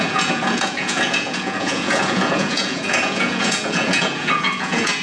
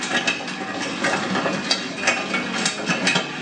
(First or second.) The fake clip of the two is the first